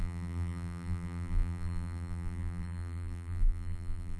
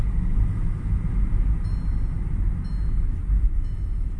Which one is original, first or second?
second